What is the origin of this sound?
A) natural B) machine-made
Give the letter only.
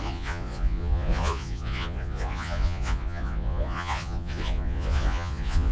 B